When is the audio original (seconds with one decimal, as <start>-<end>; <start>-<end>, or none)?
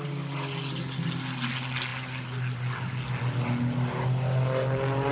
0.0-5.1